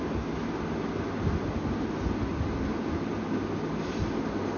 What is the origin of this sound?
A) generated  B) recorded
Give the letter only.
B